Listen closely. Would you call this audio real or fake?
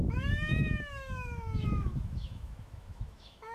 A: fake